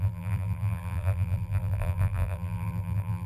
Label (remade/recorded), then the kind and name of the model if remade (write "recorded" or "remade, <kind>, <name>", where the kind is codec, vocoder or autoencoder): remade, vocoder, BigVGAN v2